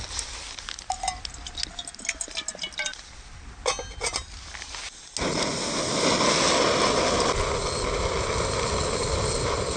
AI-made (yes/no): no